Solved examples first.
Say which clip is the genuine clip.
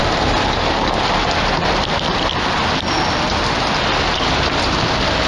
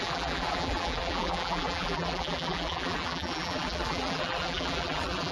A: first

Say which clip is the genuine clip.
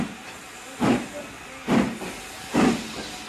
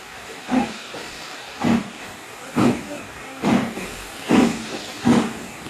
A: first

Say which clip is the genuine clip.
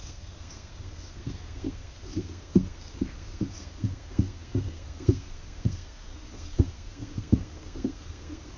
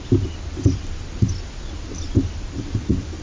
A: second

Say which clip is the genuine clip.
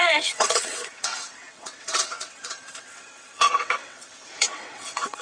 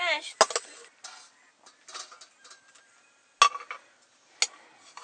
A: second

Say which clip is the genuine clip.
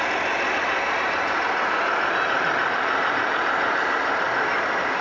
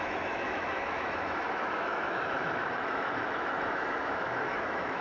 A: first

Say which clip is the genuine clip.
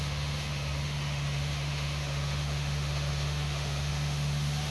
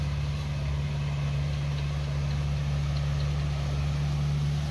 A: second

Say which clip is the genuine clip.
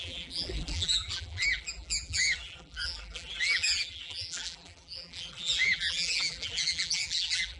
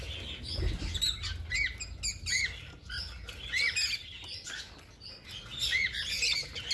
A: second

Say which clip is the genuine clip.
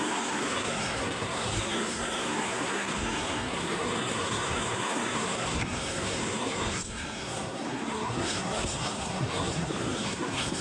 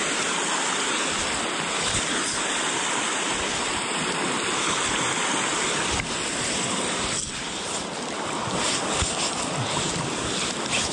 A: second